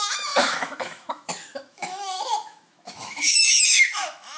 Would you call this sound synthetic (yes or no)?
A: yes